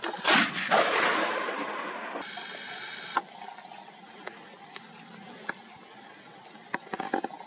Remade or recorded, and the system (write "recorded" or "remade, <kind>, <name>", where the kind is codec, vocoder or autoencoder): recorded